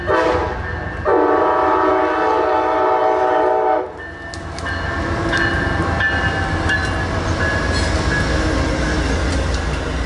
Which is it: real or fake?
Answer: real